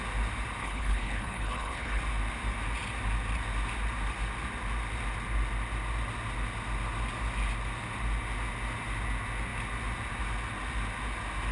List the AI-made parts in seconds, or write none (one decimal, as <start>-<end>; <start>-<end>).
0.6-2.0